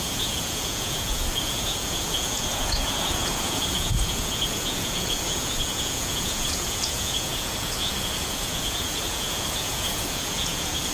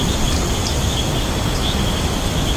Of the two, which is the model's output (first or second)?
first